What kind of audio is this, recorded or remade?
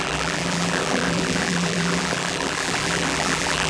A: remade